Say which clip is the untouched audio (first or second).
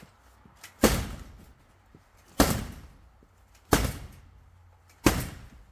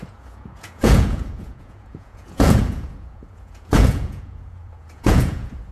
first